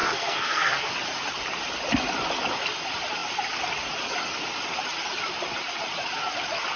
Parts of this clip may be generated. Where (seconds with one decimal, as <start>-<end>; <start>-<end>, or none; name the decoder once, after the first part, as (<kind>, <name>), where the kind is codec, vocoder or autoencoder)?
0.0-0.9 (codec, SNAC)